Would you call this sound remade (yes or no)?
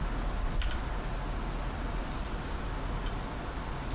no